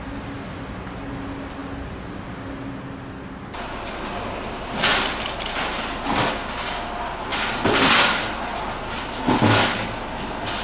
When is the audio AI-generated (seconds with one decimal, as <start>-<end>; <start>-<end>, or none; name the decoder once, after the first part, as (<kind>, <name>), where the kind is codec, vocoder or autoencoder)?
none